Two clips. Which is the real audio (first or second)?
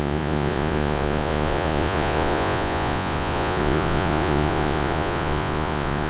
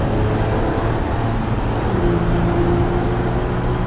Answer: second